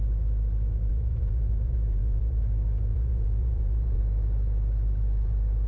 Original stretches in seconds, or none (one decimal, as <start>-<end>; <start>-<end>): 0.0-0.9; 2.4-2.9; 4.0-5.7